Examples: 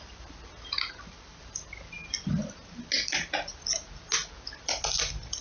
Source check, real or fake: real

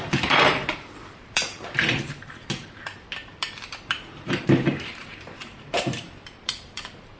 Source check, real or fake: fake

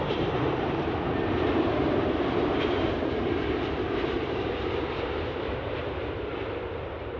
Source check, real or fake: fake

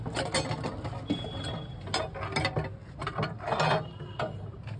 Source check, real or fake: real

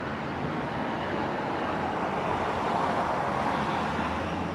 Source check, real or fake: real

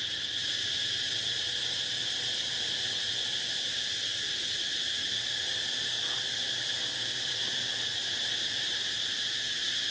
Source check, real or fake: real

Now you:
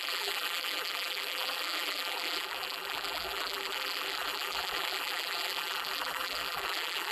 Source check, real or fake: fake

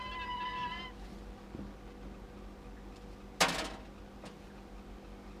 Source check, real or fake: real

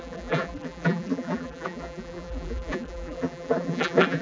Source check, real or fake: fake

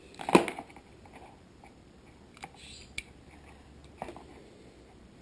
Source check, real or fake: real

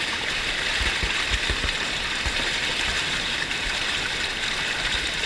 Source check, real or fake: fake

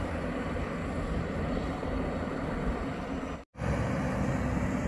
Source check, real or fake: real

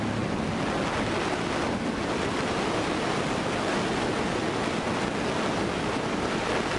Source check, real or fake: real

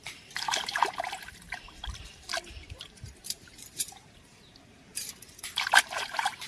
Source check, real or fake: fake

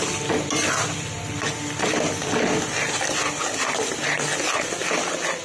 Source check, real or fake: real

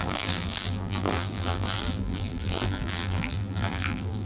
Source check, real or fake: fake